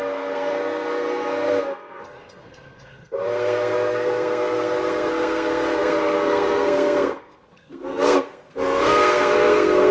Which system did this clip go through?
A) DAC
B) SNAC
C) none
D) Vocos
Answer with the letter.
B